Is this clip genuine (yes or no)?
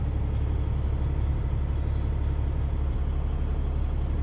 yes